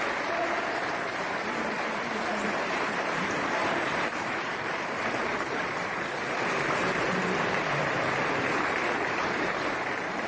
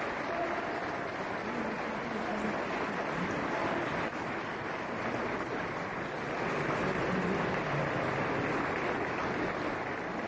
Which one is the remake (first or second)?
first